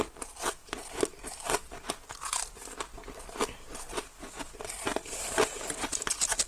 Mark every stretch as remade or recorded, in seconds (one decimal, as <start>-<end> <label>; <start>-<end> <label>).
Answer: 0.0-6.5 recorded